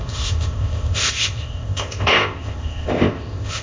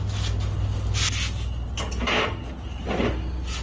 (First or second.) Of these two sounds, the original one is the second